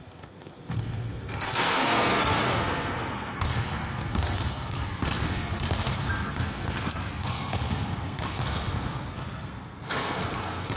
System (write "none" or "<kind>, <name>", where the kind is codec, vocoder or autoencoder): codec, SNAC